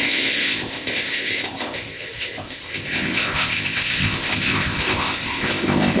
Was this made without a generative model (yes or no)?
no